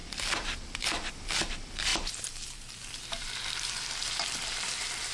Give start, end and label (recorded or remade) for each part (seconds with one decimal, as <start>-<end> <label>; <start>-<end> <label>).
0.0-5.1 remade